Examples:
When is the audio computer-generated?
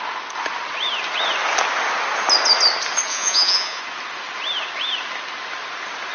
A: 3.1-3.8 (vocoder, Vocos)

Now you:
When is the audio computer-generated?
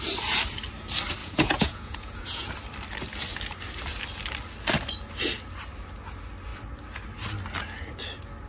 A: 1.2-2.5 (vocoder, Vocos)